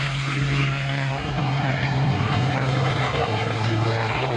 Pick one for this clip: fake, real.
fake